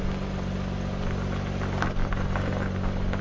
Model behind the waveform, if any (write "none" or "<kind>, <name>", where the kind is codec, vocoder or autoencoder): none